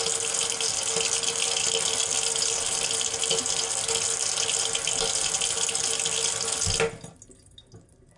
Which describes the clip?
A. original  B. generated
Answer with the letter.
A